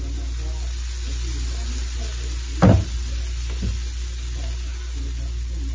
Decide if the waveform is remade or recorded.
recorded